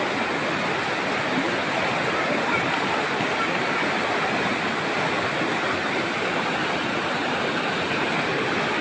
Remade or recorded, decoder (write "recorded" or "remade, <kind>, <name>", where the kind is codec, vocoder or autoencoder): recorded